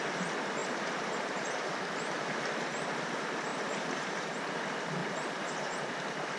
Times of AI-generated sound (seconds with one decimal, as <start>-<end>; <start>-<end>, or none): 0.6-1.5; 3.5-4.5; 5.0-5.9